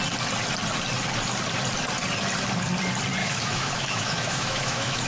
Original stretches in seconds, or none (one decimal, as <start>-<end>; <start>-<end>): 0.0-3.2